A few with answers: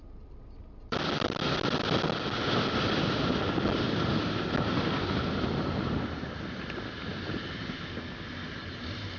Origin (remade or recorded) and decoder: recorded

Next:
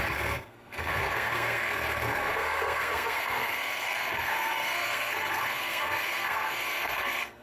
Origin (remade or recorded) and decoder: remade, codec, SNAC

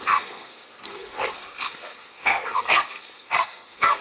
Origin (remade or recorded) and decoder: remade, codec, SNAC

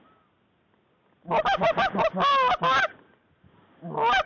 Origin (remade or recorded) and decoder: recorded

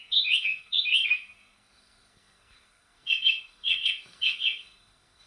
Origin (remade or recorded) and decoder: remade, codec, SNAC